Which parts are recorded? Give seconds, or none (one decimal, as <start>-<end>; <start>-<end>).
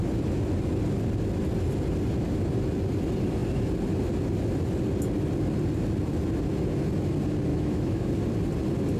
0.0-7.5; 8.1-9.0